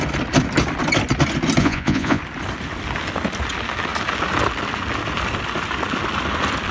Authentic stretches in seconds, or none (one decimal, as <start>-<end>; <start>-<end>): 0.0-1.6; 2.2-6.7